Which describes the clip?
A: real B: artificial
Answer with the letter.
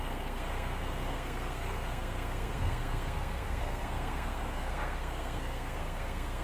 B